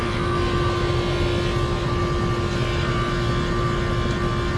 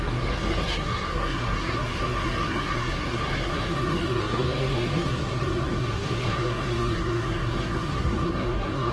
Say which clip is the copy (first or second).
second